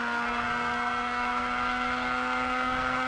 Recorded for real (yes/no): no